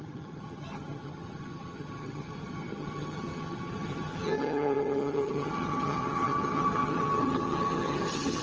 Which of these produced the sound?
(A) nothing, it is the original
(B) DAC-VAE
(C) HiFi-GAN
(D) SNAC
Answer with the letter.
C